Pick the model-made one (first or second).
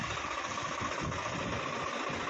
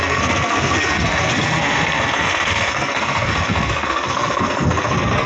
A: second